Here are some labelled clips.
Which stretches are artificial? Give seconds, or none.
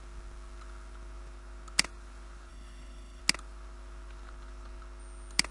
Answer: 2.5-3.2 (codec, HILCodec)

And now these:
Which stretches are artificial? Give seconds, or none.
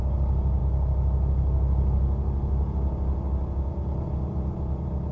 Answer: none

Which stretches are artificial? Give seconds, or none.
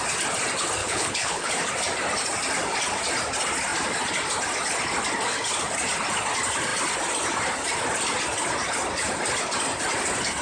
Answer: 0.8-1.5 (codec, HILCodec)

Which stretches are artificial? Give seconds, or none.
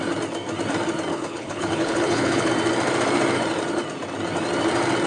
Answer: 1.1-2.5 (codec, HILCodec)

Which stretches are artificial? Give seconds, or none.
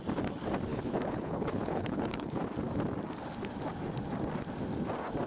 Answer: 0.7-2.4 (codec, HILCodec)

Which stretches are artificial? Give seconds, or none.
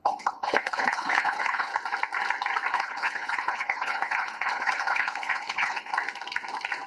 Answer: 0.0-1.7 (codec, HILCodec); 2.7-5.9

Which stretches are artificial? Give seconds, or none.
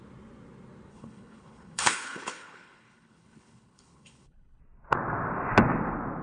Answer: 0.9-4.6 (codec, HILCodec)